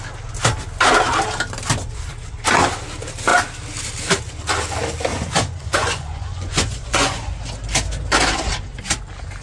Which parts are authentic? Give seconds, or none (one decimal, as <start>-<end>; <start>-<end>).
0.0-5.1; 7.4-9.4